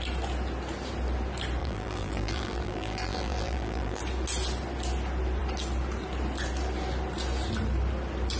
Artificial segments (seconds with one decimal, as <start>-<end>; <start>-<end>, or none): 1.6-4.0